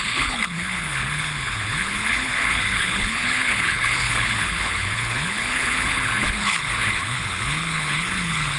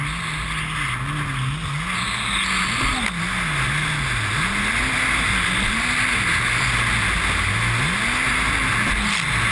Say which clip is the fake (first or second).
first